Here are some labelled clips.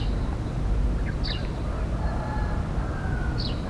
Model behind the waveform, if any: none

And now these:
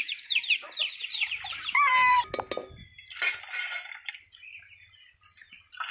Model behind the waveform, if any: none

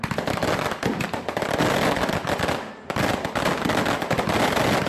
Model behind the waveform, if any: none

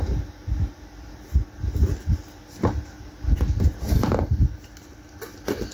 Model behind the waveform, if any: none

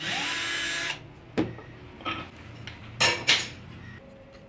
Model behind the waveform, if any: none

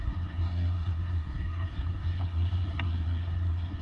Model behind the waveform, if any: codec, SNAC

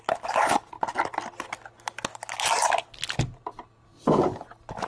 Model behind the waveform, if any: none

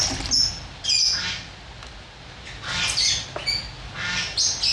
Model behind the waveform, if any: none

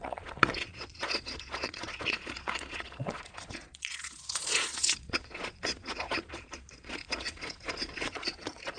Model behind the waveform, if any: vocoder, Vocos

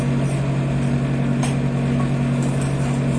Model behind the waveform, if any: none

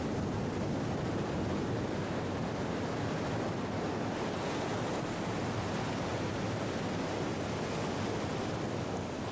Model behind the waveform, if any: none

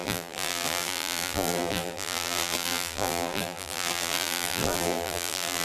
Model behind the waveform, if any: vocoder, BigVGAN v2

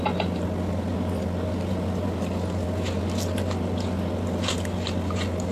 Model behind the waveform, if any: none